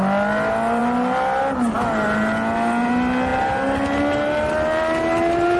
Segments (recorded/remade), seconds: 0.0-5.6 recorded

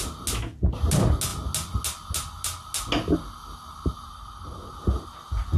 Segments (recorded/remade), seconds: 0.0-5.6 recorded

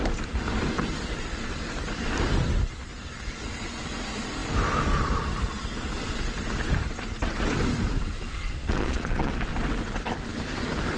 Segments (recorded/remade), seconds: 0.0-8.6 recorded; 8.6-9.3 remade; 9.3-11.0 recorded

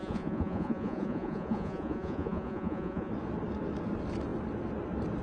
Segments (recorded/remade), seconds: 0.0-3.1 remade; 3.1-5.2 recorded

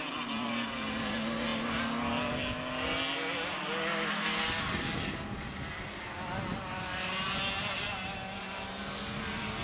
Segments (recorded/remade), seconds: 0.0-9.6 recorded

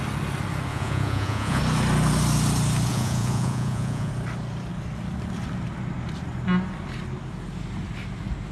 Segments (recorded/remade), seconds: 0.0-0.7 recorded; 0.7-1.6 remade; 1.6-2.9 recorded; 2.9-4.1 remade; 4.1-8.5 recorded

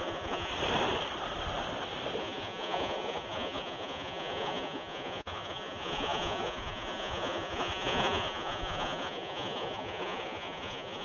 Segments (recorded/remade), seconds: 0.0-0.5 remade; 0.5-2.2 recorded; 2.2-11.0 remade